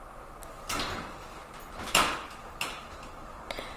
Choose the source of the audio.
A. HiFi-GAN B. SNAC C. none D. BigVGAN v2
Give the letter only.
C